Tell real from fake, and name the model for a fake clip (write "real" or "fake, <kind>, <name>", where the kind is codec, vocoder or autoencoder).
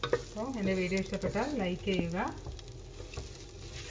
real